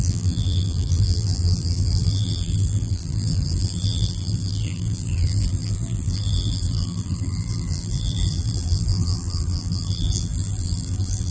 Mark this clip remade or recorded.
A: remade